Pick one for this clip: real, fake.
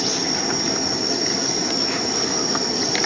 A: real